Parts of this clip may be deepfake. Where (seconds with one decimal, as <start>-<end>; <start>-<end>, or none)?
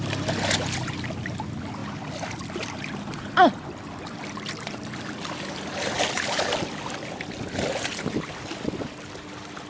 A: none